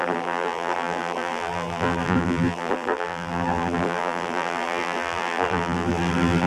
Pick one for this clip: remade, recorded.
remade